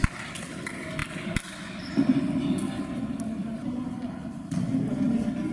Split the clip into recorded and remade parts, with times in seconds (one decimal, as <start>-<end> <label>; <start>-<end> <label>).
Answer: 0.0-3.4 recorded; 3.4-4.0 remade; 4.0-5.5 recorded